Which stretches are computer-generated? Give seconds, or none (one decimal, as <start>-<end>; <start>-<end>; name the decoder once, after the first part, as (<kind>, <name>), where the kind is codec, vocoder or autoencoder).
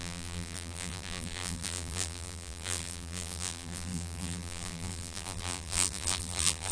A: 0.0-6.7 (vocoder, BigVGAN v2)